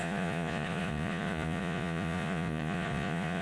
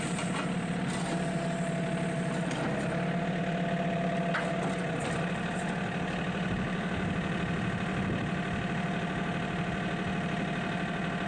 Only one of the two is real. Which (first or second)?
second